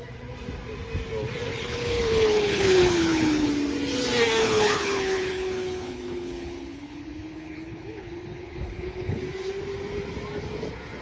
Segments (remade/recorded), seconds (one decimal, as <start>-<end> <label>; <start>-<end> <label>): 0.0-1.5 recorded; 1.5-3.5 remade; 3.5-4.4 recorded; 4.4-9.2 remade; 9.2-11.0 recorded